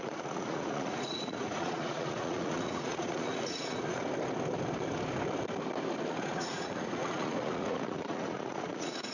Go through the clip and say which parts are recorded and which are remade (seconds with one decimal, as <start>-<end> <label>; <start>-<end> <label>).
0.0-4.0 remade; 4.0-6.1 recorded; 6.1-9.1 remade